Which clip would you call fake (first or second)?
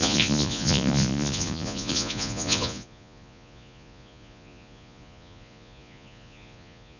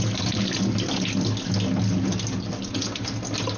first